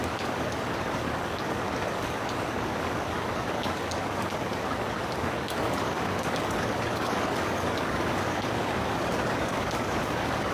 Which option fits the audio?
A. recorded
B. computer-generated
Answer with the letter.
B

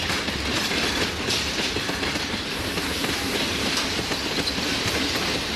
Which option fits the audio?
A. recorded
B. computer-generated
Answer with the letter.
B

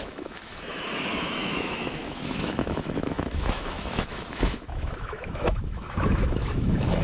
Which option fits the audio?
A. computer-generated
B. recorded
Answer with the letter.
A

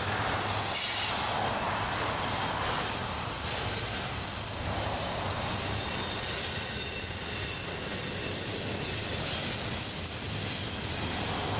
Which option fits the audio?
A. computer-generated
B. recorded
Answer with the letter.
B